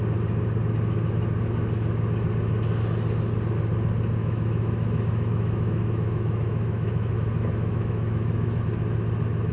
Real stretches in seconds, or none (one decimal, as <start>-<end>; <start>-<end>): 0.0-4.2; 8.6-9.5